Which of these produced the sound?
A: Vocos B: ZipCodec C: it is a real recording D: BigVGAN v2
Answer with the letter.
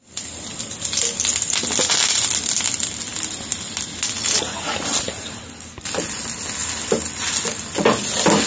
C